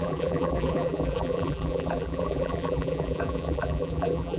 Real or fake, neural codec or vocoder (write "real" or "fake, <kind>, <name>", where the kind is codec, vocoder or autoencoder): fake, vocoder, BigVGAN v2